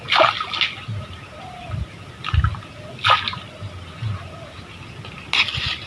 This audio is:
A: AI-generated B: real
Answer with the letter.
B